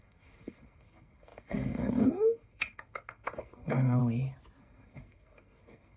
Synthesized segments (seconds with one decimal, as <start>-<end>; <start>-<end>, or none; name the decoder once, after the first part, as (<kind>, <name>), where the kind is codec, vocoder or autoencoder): 0.0-4.0 (codec, SNAC); 4.6-6.0